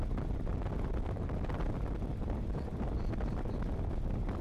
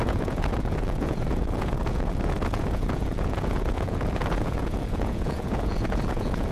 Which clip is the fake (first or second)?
second